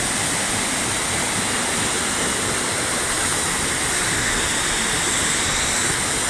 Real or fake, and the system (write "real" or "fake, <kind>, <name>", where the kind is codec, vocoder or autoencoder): real